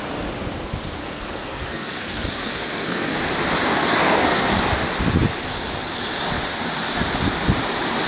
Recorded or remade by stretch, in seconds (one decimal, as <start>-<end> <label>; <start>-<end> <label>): 0.0-1.0 recorded; 1.0-3.2 remade; 3.2-3.7 recorded; 3.7-4.6 remade; 4.6-8.1 recorded